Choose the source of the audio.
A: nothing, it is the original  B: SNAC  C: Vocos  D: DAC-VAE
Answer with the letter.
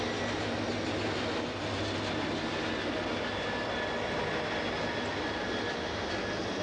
A